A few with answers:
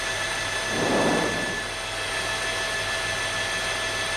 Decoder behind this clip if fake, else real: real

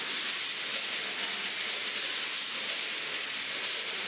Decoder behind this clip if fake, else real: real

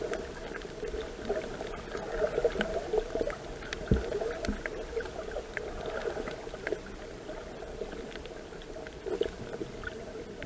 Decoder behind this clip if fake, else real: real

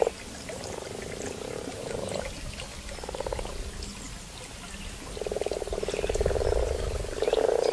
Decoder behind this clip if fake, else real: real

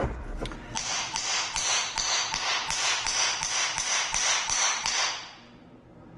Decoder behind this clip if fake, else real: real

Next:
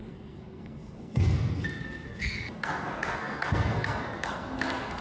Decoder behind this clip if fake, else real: fake, codec, SNAC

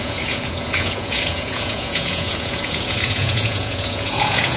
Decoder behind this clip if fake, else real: fake, vocoder, Vocos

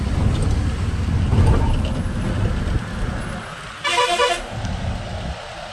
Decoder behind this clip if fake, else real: real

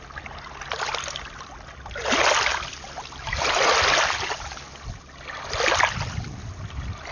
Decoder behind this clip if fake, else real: real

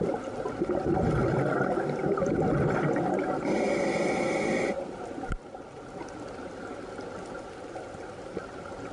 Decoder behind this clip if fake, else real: real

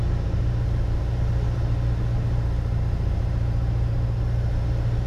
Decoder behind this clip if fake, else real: real